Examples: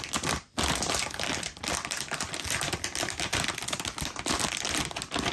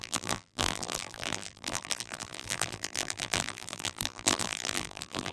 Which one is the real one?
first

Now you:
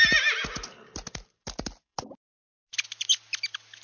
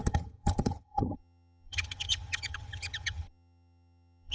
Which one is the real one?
first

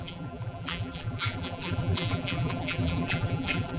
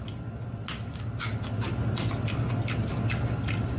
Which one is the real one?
second